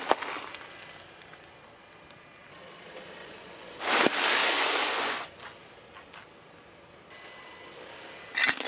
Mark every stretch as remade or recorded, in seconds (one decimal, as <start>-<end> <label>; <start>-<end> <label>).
0.0-3.2 recorded; 3.2-3.8 remade; 3.8-4.4 recorded; 4.4-5.3 remade; 5.3-8.7 recorded